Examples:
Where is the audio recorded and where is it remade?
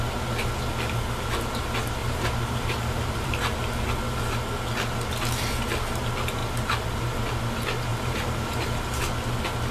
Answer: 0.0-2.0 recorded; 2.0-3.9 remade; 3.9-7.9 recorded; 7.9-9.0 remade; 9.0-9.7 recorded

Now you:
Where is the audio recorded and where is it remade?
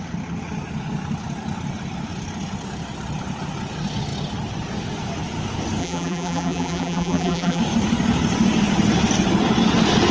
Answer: 0.0-5.8 recorded; 5.8-7.6 remade; 7.6-10.1 recorded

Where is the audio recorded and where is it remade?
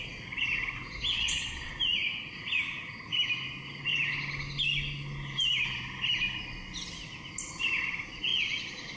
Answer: 0.0-1.1 recorded; 1.1-1.7 remade; 1.7-9.0 recorded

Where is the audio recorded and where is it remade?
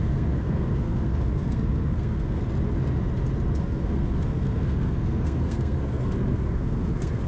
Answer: 0.0-2.4 remade; 2.4-3.6 recorded; 3.6-7.3 remade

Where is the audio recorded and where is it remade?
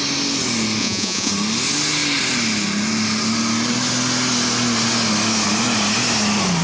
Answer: 0.0-0.8 recorded; 0.8-1.3 remade; 1.3-6.6 recorded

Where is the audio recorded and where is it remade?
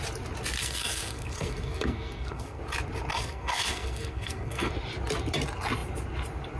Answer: 0.0-0.6 recorded; 0.6-2.6 remade; 2.6-3.1 recorded; 3.1-4.7 remade; 4.7-6.6 recorded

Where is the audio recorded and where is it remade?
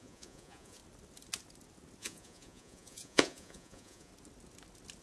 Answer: 0.0-0.8 remade; 0.8-2.0 recorded; 2.0-4.1 remade; 4.1-5.0 recorded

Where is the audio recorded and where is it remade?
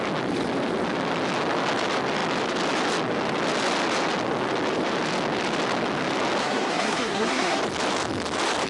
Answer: 0.0-6.4 recorded; 6.4-7.6 remade; 7.6-8.7 recorded